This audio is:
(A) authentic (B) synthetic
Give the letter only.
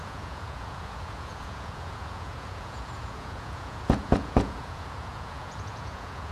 B